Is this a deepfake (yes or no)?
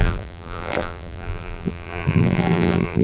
yes